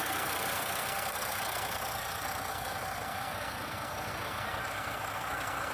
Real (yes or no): no